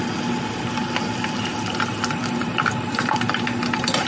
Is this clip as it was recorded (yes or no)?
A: yes